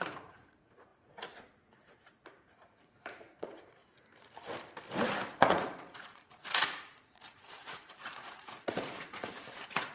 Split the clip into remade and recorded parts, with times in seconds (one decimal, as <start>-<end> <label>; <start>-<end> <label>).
0.0-3.8 remade; 3.8-5.3 recorded; 5.3-9.9 remade